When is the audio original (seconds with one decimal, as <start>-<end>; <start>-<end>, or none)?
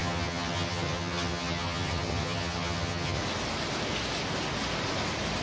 3.2-5.4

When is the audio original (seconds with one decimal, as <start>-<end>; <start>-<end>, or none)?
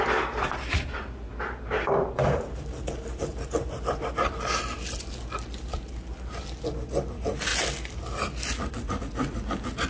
0.0-9.9